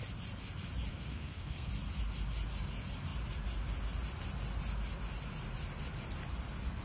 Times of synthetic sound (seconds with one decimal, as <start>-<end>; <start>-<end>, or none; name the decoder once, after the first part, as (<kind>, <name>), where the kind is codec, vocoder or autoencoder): 0.9-1.7 (codec, SNAC)